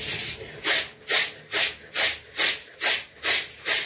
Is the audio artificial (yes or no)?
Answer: no